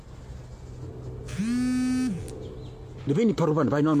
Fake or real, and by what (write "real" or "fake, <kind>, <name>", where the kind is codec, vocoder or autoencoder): real